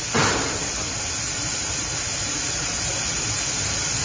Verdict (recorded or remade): recorded